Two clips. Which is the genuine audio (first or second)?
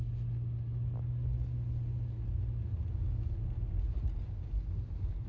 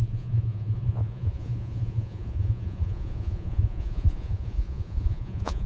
first